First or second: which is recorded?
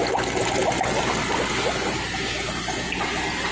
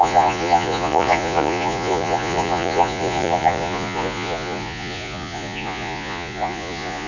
first